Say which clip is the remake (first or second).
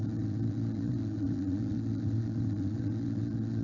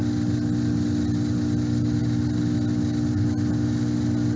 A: first